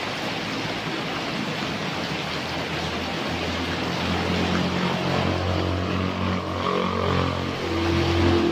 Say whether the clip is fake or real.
real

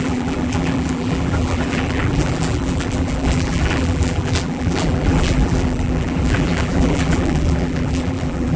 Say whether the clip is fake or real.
fake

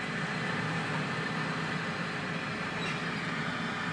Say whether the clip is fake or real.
real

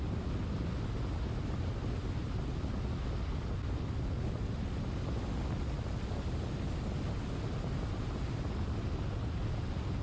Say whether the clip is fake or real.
real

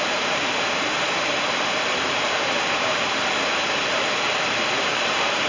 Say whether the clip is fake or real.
fake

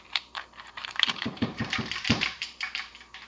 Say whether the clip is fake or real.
fake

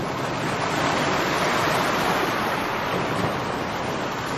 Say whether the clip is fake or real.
real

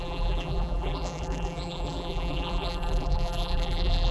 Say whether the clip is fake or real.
fake